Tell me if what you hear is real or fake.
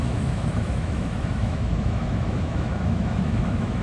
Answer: fake